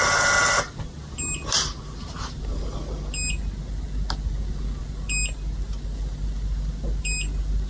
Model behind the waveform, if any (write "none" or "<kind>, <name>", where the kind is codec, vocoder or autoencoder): none